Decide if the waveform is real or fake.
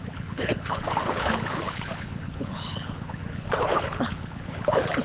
fake